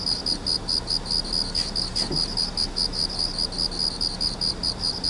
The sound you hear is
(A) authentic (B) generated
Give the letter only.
A